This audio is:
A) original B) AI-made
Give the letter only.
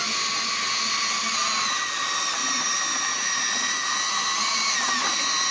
A